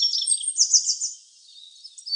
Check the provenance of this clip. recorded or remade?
recorded